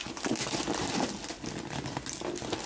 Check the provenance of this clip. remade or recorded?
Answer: recorded